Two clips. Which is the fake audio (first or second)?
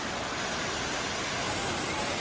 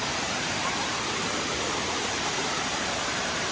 second